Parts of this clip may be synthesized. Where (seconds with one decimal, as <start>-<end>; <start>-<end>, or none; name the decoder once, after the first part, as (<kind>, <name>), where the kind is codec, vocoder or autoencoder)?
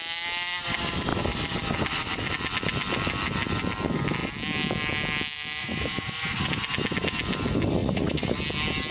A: 5.6-6.5 (vocoder, Vocos); 7.8-8.4